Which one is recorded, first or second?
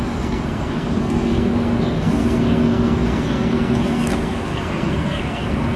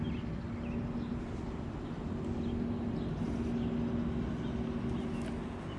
second